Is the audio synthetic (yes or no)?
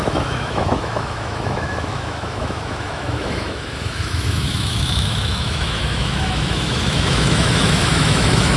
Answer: yes